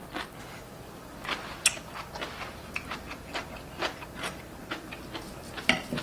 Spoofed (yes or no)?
no